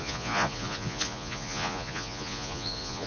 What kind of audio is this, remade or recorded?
remade